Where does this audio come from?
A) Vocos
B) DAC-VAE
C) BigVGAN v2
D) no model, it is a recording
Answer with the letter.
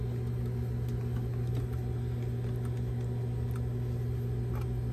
D